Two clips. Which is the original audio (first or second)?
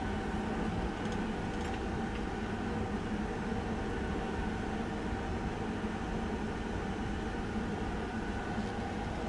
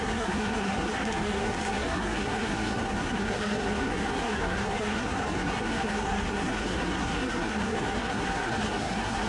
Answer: first